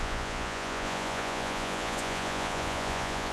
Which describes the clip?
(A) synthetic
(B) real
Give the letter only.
A